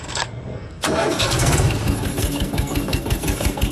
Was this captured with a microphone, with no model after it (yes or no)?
no